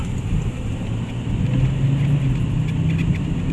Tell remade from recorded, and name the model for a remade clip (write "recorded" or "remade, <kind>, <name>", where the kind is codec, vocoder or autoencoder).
recorded